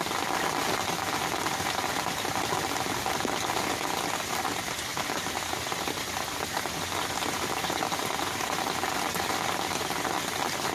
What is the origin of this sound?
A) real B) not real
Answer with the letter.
A